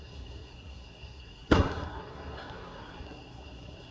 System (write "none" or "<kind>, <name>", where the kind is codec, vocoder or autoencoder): codec, SNAC